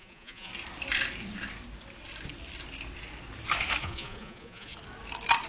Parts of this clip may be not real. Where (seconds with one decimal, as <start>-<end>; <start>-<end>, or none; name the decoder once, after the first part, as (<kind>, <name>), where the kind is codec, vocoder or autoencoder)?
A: 0.0-0.5 (vocoder, Vocos); 3.8-4.7